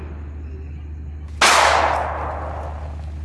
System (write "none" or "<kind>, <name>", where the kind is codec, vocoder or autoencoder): none